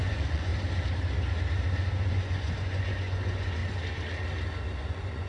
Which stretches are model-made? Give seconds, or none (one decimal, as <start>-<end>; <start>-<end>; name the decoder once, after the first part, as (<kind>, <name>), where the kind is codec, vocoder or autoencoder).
0.0-0.5 (vocoder, Vocos); 2.1-3.6; 4.8-5.3